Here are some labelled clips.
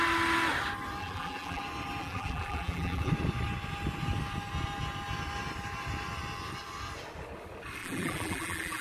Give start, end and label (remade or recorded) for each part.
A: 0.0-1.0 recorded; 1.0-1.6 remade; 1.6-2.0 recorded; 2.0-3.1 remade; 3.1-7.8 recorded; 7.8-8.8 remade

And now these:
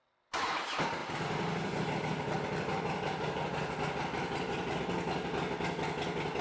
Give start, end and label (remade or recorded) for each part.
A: 0.0-6.4 recorded

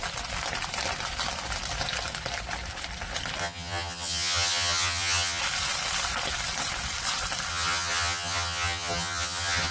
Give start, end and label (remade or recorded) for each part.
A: 0.0-3.4 recorded; 3.4-5.4 remade; 5.4-7.5 recorded; 7.5-9.7 remade

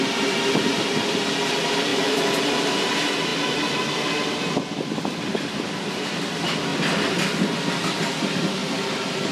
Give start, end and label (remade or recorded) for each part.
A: 0.0-1.9 recorded; 1.9-2.4 remade; 2.4-9.3 recorded

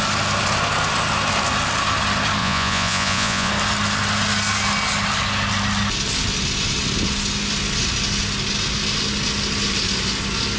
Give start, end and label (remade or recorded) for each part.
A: 0.0-2.4 recorded; 2.4-3.5 remade; 3.5-10.6 recorded

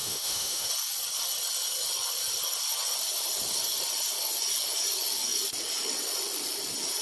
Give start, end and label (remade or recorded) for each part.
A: 0.0-0.7 remade; 0.7-7.0 recorded

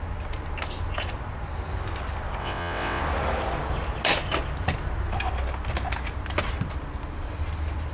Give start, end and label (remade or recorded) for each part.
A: 0.0-2.4 recorded; 2.4-3.0 remade; 3.0-7.9 recorded

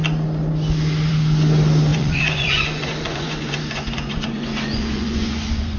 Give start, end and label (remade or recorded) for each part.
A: 0.0-1.9 recorded; 1.9-5.8 remade